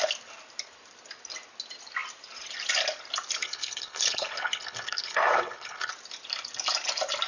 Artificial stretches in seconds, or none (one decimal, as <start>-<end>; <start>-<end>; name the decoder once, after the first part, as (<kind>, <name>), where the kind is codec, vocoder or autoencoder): 3.4-5.9 (codec, HILCodec)